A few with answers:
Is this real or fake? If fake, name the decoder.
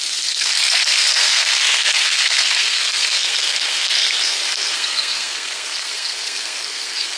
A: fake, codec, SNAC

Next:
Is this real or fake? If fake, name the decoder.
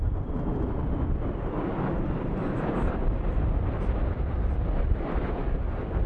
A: real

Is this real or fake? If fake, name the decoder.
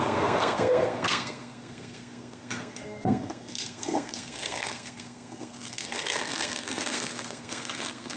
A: fake, codec, SNAC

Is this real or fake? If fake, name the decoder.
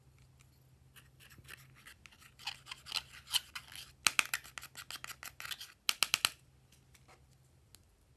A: real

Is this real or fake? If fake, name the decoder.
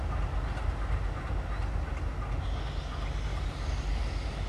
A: real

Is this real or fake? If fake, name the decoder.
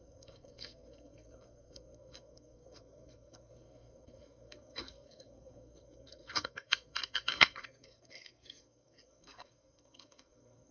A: fake, codec, SNAC